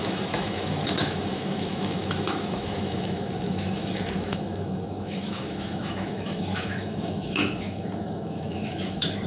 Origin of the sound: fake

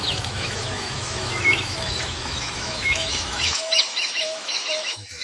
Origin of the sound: fake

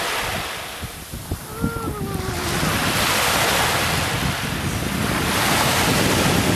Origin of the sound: real